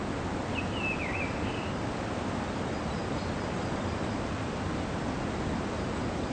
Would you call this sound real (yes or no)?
yes